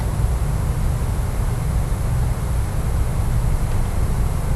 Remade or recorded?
recorded